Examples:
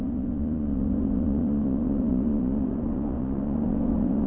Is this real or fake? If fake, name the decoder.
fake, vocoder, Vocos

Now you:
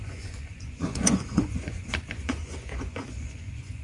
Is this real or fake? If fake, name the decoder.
fake, vocoder, Vocos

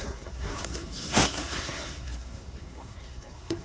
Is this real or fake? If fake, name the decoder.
fake, codec, SNAC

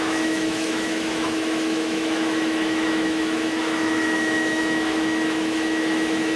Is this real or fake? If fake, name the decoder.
fake, autoencoder, DAC-VAE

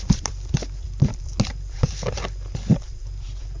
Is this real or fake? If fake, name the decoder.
real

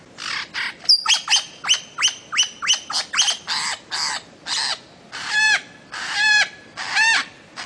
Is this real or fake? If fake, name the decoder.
real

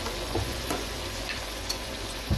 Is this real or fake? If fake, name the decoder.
fake, vocoder, Vocos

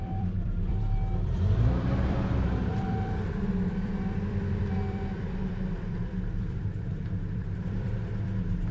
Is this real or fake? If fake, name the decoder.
fake, vocoder, BigVGAN v2